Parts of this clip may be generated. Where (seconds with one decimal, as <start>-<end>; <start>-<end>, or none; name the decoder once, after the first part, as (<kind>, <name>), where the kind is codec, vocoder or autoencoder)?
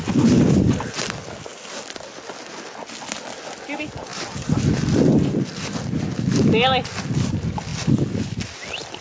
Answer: none